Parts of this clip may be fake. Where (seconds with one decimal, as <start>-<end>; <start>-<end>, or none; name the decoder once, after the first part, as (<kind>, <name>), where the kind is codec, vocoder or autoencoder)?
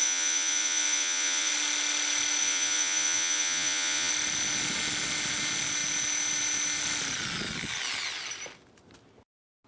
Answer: 0.0-1.5 (vocoder, Vocos); 2.4-4.1